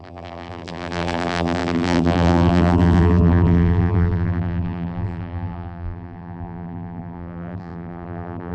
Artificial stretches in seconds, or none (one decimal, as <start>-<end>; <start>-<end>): 0.0-8.5